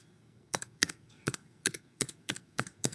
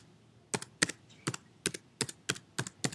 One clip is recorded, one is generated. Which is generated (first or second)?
first